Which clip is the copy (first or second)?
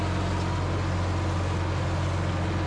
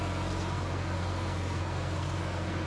second